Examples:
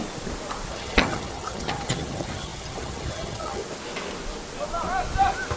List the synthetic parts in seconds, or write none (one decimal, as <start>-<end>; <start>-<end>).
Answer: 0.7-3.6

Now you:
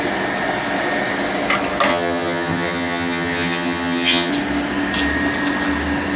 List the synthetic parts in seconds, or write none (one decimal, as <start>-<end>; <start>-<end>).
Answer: 1.9-4.3

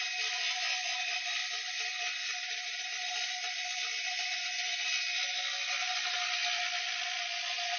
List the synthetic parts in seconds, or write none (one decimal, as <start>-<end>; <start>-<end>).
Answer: none

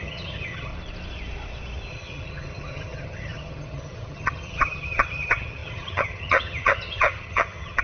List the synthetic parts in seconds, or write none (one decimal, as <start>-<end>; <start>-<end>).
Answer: 0.0-0.7; 1.9-7.8

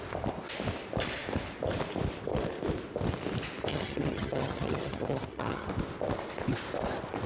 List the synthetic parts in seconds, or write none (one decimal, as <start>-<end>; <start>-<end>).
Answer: 3.7-5.7

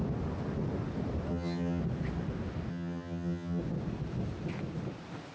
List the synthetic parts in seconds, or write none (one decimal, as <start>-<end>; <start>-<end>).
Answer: 1.3-1.8; 2.7-3.6

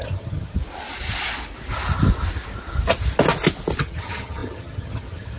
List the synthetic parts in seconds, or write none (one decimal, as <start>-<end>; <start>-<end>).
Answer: 0.0-0.6; 3.8-5.4